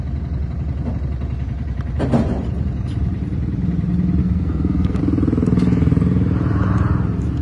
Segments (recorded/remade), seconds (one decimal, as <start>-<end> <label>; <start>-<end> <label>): 0.0-4.2 recorded; 4.2-5.0 remade; 5.0-7.4 recorded

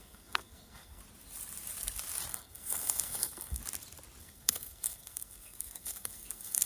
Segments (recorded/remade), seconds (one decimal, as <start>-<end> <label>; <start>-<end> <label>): 0.0-1.0 remade; 1.0-2.3 recorded; 2.3-3.6 remade; 3.6-4.2 recorded; 4.2-6.7 remade

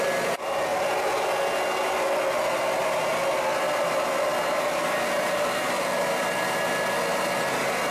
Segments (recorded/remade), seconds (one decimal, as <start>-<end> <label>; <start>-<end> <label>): 0.0-7.9 recorded

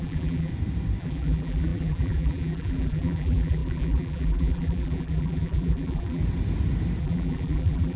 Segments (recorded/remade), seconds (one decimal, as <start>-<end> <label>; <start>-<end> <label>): 0.0-0.5 remade; 0.5-1.0 recorded; 1.0-6.2 remade; 6.2-7.0 recorded; 7.0-8.0 remade

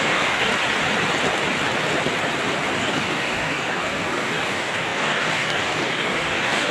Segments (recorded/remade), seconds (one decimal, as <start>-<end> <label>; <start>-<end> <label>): 0.0-0.5 remade; 0.5-2.8 recorded; 2.8-6.7 remade

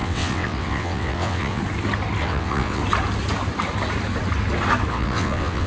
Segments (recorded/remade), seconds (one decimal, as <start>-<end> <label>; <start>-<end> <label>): 0.0-1.6 remade; 1.6-2.2 recorded; 2.2-2.8 remade; 2.8-4.9 recorded; 4.9-5.7 remade

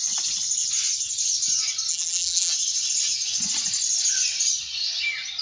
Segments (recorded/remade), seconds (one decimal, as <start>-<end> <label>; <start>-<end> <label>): 0.0-1.9 recorded; 1.9-2.5 remade; 2.5-5.4 recorded

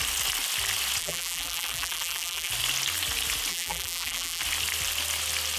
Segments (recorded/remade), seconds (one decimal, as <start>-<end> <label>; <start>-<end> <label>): 0.0-1.0 recorded; 1.0-2.5 remade; 2.5-3.5 recorded; 3.5-4.4 remade; 4.4-5.6 recorded